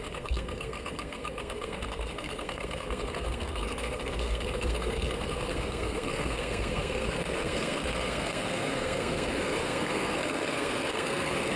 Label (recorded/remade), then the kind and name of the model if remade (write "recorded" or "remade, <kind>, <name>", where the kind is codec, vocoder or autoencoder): remade, codec, SNAC